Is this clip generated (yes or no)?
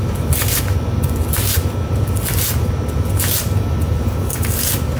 no